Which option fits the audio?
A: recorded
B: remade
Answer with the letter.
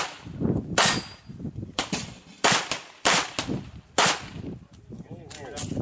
A